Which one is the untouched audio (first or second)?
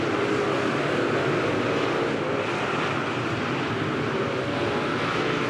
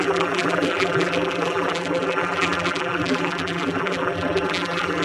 first